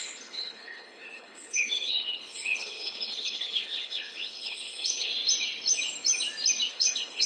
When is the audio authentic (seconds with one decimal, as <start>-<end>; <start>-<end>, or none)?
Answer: 5.1-6.7